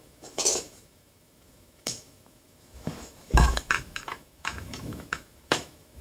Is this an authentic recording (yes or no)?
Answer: no